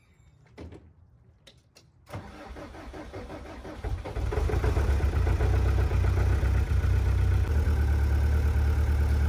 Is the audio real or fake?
real